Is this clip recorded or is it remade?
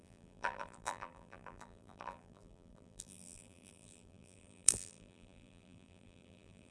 remade